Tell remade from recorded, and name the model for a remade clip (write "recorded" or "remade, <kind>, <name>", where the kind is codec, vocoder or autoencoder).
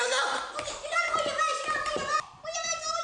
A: recorded